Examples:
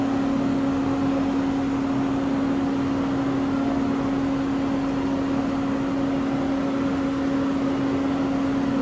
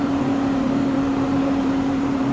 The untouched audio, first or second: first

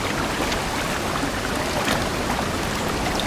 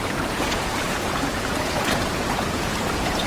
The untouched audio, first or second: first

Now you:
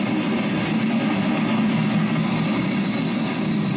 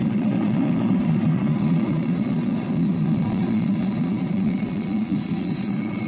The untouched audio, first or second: first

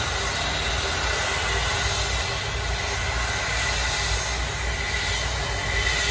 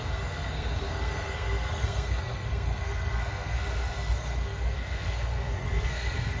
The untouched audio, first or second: first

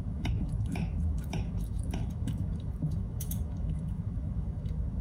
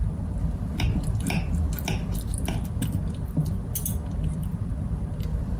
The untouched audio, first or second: second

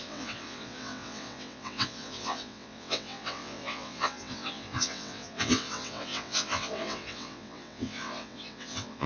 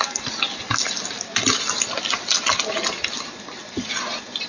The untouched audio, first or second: second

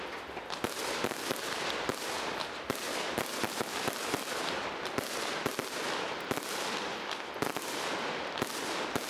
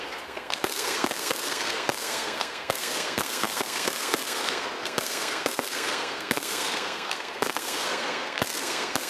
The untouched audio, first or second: first